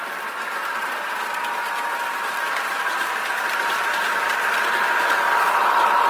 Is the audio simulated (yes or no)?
yes